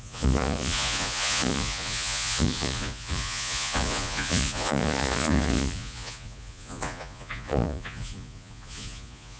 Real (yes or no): no